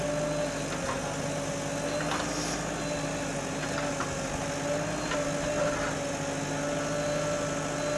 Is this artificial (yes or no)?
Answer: no